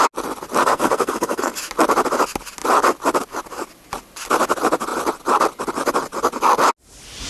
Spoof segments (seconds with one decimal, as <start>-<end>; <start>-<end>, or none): 0.6-1.6